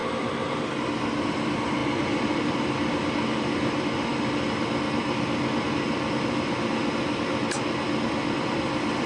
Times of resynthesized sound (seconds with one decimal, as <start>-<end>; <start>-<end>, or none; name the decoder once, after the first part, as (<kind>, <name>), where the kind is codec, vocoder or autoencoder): 0.0-0.6 (vocoder, BigVGAN v2)